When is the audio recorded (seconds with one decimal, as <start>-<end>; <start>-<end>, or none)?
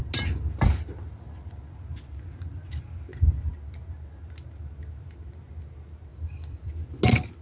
0.0-6.1; 6.7-7.4